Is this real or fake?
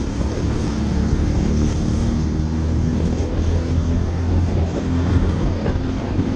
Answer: fake